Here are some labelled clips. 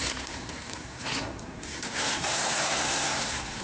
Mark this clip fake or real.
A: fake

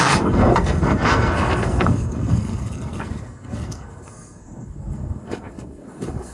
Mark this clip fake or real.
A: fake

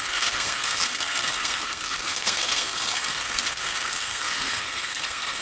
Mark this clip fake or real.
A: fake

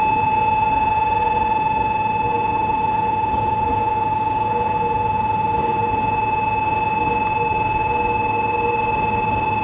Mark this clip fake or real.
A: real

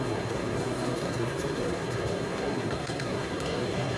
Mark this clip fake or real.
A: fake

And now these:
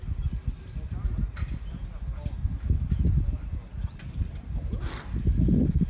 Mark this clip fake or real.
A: real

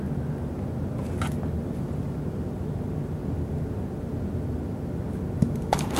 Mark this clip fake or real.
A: real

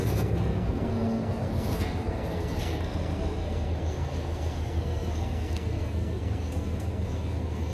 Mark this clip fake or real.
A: fake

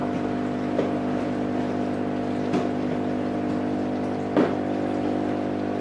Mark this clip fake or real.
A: real